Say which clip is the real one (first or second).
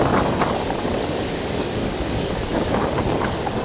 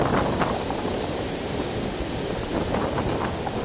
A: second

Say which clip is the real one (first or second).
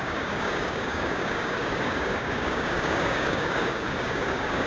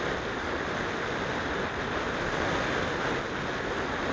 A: second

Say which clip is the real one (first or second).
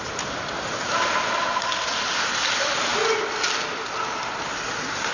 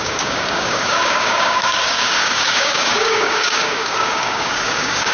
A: first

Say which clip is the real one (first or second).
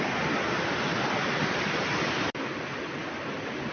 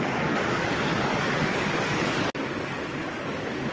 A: first